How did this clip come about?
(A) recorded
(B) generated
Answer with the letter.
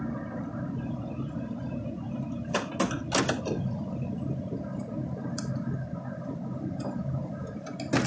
A